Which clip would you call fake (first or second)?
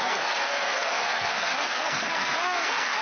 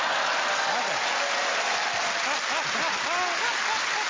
first